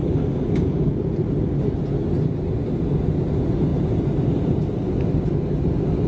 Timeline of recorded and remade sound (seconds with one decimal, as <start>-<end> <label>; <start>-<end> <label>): 0.0-0.9 remade; 0.9-6.1 recorded